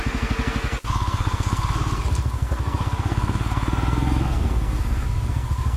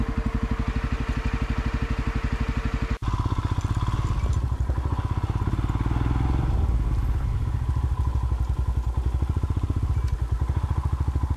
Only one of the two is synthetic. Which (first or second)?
first